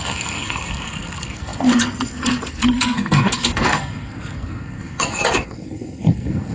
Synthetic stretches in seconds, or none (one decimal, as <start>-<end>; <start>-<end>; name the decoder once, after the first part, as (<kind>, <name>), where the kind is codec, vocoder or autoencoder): 0.0-6.5 (codec, SNAC)

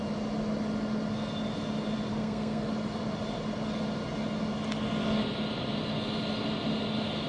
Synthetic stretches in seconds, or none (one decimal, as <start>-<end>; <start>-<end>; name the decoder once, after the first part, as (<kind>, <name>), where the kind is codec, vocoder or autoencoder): 2.1-2.7 (codec, SNAC)

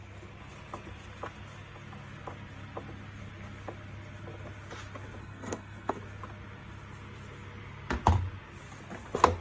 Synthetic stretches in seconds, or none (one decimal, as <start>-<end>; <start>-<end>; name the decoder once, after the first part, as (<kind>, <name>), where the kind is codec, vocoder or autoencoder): 5.2-6.0 (codec, SNAC)

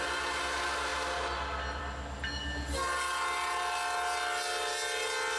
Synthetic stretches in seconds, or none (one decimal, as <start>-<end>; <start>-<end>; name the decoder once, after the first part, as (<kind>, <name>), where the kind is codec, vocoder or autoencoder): none

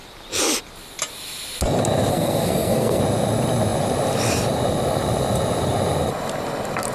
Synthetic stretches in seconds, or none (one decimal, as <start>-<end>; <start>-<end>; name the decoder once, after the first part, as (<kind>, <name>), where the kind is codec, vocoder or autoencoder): 2.1-3.0 (codec, SNAC)

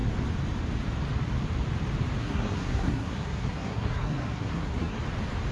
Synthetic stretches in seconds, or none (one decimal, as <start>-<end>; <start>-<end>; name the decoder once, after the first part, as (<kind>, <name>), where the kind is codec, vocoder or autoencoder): 2.2-5.0 (codec, SNAC)

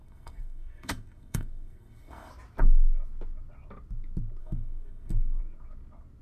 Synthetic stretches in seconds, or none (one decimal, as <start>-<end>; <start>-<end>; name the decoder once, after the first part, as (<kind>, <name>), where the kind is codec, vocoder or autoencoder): 0.0-2.3 (codec, SNAC); 4.4-5.4

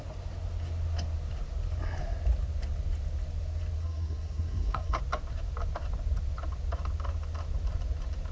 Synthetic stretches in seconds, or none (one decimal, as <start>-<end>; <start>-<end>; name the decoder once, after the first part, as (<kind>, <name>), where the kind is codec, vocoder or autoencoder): 3.8-5.0 (codec, SNAC)